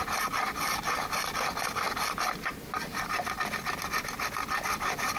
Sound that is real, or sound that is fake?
real